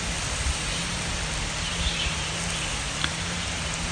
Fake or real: real